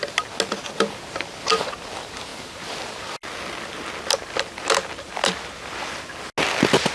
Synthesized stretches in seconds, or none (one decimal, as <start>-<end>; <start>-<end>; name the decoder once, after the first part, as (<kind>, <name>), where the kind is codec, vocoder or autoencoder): none